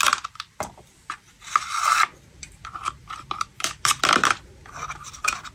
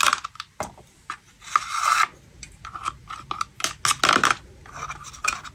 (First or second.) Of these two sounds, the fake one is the first